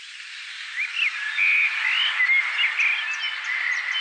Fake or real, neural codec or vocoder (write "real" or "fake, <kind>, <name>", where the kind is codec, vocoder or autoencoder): real